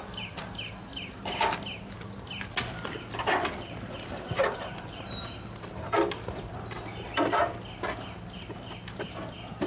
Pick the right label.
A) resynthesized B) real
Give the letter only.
B